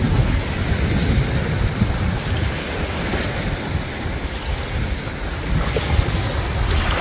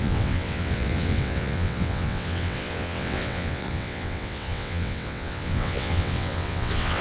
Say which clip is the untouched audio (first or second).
first